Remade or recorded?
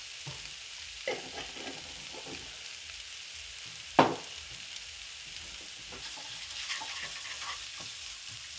recorded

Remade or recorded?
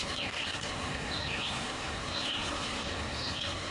remade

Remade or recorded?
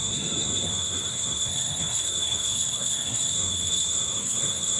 remade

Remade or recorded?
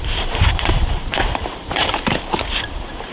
remade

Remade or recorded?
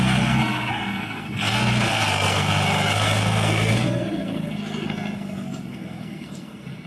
remade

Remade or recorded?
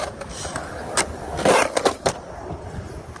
recorded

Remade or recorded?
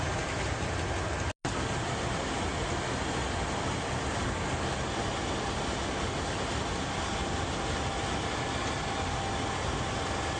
recorded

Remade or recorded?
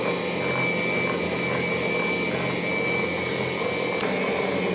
recorded